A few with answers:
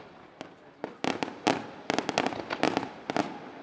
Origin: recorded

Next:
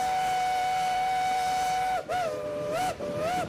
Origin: remade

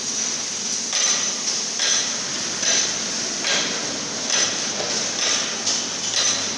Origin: remade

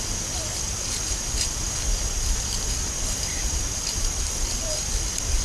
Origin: remade